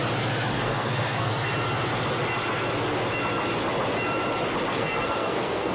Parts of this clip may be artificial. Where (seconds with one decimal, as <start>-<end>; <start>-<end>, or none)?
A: 0.5-1.3; 4.7-5.7